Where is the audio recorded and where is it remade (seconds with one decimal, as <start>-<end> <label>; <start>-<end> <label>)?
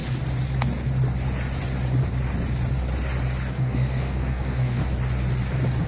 0.0-3.5 recorded; 3.5-4.8 remade; 4.8-5.9 recorded